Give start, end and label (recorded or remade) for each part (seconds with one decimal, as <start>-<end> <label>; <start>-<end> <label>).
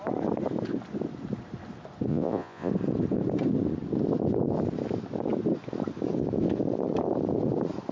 0.0-2.1 recorded; 2.1-2.7 remade; 2.7-7.9 recorded